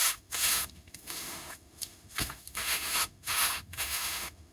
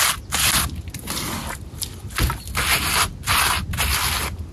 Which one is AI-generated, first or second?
first